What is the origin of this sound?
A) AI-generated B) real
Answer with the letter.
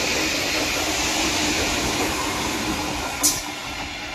B